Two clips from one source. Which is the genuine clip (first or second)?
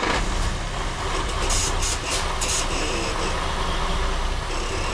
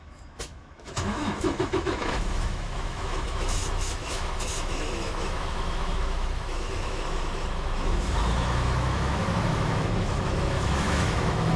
first